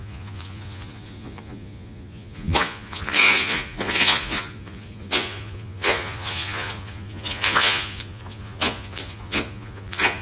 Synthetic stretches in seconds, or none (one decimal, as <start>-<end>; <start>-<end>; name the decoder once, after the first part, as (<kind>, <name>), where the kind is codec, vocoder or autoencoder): 0.0-10.2 (vocoder, Vocos)